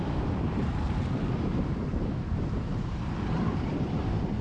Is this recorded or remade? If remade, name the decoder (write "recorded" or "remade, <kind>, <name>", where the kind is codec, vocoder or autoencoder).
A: remade, vocoder, BigVGAN v2